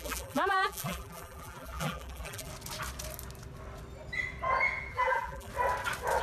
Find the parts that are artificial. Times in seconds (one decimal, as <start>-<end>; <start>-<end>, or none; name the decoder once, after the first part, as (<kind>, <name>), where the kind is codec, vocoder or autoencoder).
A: 0.0-2.5 (vocoder, BigVGAN v2); 4.9-5.5

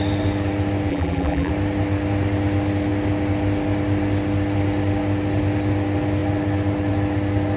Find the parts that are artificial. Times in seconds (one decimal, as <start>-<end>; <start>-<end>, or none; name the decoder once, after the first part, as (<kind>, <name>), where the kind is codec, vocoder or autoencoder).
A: 0.9-1.5 (vocoder, BigVGAN v2)

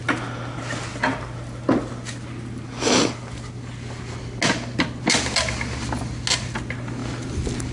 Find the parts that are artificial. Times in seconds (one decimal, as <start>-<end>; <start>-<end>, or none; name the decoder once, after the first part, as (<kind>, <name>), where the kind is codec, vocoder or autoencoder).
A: none

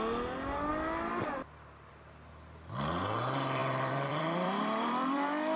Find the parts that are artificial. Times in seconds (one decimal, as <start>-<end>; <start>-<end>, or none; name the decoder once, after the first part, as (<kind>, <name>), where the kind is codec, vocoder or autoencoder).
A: 3.6-5.6 (vocoder, BigVGAN v2)

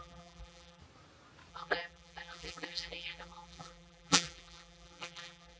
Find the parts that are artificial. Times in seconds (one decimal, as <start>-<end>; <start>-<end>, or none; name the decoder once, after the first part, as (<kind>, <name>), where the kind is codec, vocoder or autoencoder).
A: 0.0-0.8 (vocoder, BigVGAN v2); 1.5-5.6